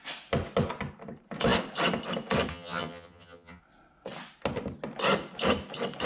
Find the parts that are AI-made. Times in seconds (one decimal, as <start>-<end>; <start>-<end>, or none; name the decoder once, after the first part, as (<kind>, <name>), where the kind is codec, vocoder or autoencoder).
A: 2.5-3.6 (vocoder, HiFi-GAN)